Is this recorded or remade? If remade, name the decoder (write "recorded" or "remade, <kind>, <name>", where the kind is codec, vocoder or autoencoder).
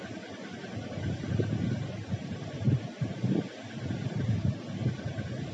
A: recorded